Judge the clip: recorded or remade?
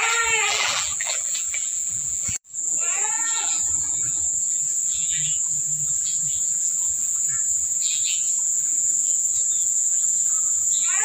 remade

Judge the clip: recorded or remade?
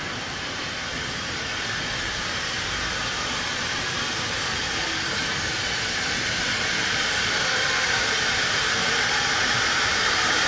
remade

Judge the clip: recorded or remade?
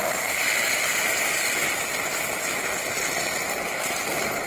recorded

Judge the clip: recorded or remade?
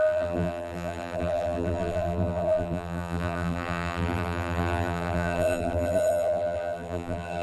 remade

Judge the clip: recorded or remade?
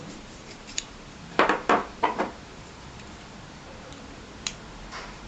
remade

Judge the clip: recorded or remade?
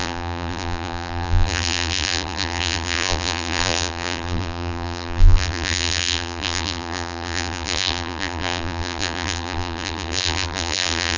remade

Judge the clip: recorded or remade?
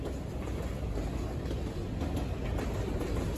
recorded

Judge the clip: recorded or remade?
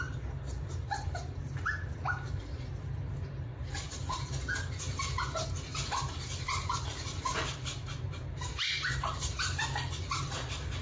remade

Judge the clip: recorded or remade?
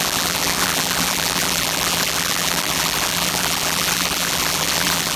remade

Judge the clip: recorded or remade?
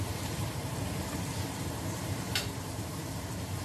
remade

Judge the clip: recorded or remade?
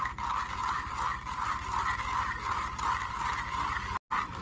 recorded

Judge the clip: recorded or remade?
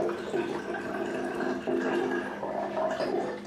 recorded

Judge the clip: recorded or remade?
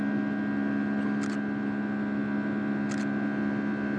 recorded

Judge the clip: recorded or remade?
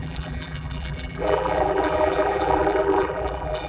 remade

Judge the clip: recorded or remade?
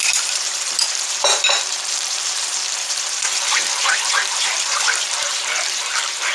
remade